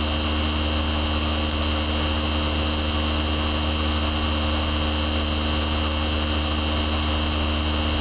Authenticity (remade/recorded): recorded